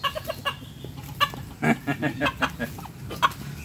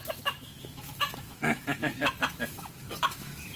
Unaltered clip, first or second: first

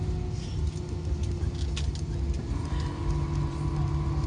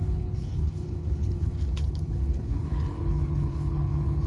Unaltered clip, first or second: first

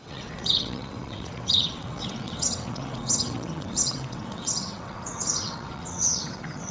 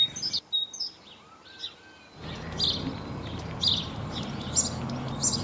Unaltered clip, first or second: second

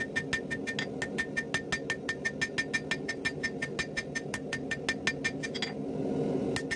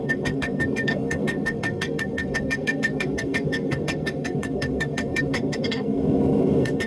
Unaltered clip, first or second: first